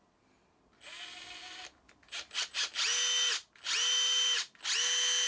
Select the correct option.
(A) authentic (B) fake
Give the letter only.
A